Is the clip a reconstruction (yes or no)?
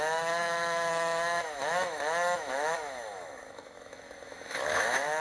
yes